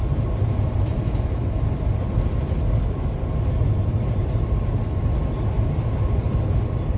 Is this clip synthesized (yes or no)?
no